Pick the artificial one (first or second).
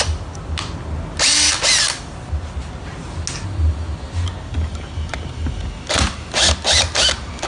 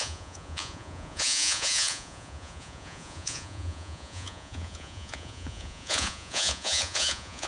second